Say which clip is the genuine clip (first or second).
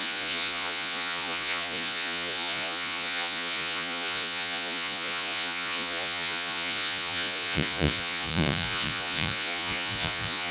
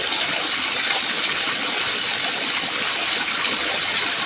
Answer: second